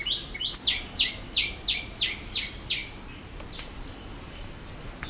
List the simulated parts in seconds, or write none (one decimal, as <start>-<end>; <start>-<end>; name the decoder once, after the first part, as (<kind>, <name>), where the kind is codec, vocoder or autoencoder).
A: none